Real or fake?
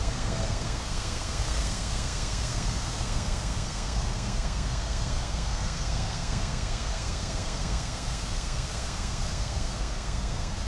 fake